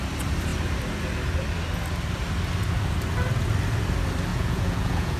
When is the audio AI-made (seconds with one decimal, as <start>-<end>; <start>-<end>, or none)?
4.3-5.2